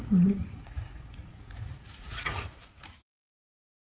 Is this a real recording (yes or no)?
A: no